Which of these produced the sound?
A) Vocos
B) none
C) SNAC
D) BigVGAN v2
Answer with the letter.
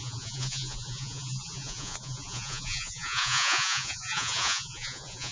A